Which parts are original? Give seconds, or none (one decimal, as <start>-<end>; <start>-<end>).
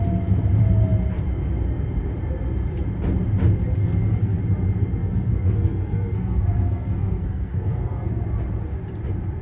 0.0-3.8; 4.4-5.0; 8.2-9.4